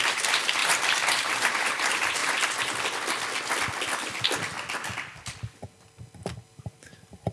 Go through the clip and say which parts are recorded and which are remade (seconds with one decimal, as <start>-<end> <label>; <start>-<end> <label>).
0.0-2.2 remade; 2.2-6.6 recorded; 6.6-7.3 remade